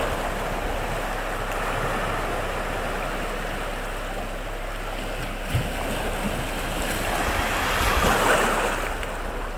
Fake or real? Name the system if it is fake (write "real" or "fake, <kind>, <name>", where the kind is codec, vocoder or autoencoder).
real